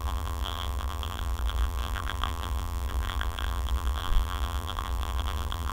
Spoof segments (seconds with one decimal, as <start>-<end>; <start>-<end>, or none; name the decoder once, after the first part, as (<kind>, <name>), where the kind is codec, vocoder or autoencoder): 0.0-5.7 (vocoder, BigVGAN v2)